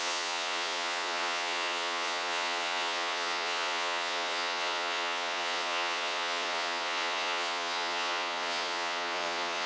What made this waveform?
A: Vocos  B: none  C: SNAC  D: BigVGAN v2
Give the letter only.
A